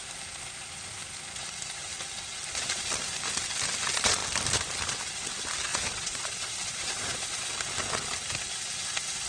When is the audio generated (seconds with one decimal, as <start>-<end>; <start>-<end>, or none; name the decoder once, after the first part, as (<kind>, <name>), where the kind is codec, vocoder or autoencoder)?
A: 5.7-7.5 (vocoder, Vocos)